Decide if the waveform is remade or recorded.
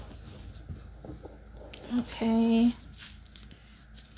recorded